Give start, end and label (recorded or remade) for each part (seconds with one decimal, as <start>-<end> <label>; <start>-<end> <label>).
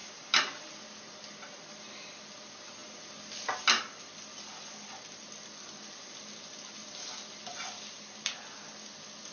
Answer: 0.0-9.3 recorded